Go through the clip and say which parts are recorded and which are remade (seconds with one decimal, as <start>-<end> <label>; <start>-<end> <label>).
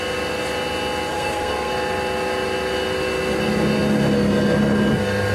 0.0-1.1 recorded; 1.1-1.7 remade; 1.7-5.3 recorded